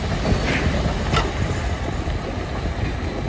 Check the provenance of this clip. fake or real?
real